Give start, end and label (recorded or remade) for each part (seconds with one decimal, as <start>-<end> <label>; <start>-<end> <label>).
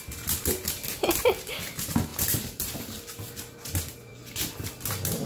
0.0-2.1 recorded; 2.1-2.8 remade; 2.8-5.3 recorded